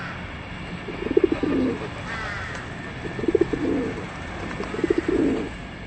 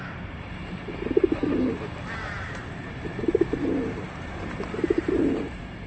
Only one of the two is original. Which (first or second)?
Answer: first